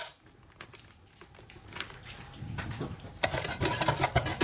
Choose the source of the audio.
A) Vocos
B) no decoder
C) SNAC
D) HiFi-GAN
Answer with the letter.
B